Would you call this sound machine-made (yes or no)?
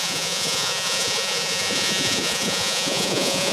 yes